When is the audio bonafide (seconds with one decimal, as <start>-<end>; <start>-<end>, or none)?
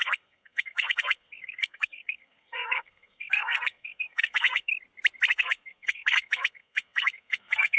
4.7-5.3